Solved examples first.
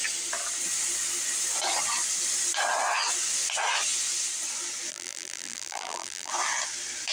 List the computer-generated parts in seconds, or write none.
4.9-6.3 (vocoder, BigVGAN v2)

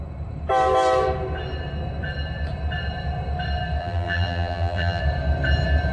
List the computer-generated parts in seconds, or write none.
3.8-5.0 (vocoder, BigVGAN v2)